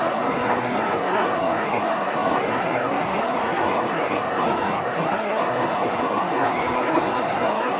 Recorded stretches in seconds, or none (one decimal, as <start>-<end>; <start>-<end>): none